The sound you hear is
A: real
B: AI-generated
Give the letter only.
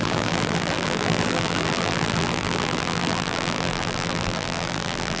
B